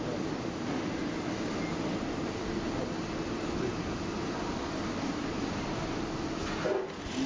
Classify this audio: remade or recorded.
recorded